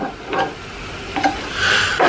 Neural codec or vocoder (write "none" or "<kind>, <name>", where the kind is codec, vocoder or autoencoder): none